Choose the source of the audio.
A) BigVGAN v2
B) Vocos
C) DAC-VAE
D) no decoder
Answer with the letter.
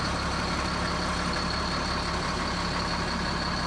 D